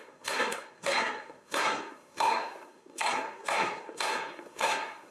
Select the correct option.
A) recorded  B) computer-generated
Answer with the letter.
B